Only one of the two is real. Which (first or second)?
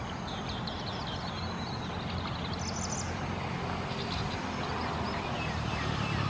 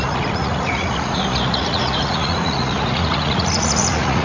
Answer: first